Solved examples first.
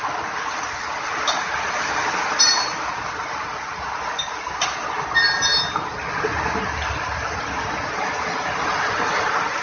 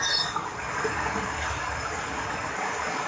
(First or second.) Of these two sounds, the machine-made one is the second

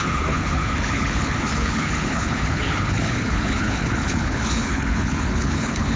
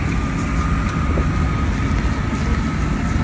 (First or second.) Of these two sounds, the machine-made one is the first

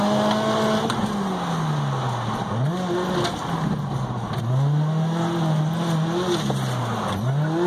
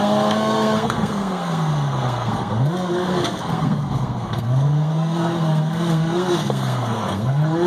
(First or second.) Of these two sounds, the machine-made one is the second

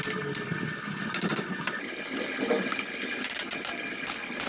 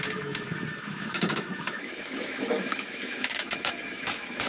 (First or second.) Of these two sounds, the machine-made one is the second